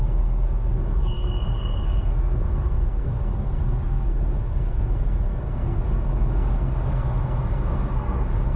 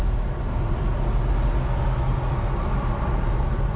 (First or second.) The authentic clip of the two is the second